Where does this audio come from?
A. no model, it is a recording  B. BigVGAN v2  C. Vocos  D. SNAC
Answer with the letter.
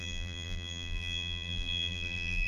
B